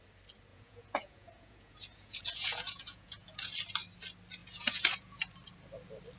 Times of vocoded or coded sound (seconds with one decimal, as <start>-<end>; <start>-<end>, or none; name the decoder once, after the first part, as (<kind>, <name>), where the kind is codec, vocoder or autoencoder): 0.5-3.5 (vocoder, Vocos); 4.4-5.2